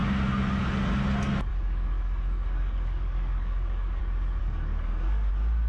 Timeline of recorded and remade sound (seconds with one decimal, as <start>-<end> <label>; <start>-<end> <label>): 0.0-1.5 recorded; 1.5-4.0 remade; 4.0-4.4 recorded; 4.4-5.3 remade; 5.3-5.7 recorded